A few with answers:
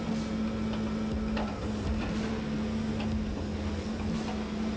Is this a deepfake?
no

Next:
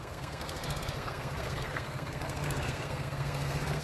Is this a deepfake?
yes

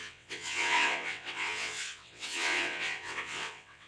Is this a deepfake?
yes